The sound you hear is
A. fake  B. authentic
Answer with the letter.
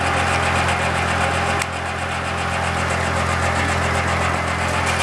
B